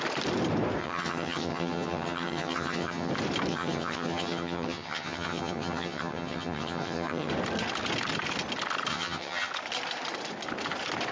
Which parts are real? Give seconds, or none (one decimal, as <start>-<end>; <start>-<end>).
0.0-0.8; 3.1-3.5; 7.3-8.9; 9.5-11.1